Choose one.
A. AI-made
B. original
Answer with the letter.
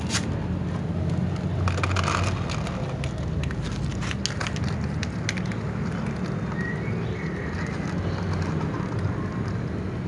B